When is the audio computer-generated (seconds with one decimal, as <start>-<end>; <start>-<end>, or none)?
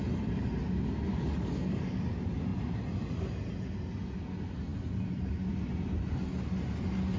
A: 1.1-2.0